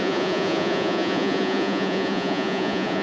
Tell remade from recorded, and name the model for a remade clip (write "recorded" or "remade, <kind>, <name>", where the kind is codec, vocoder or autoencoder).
remade, vocoder, Vocos